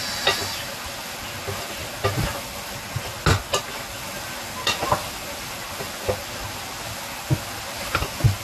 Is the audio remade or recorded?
recorded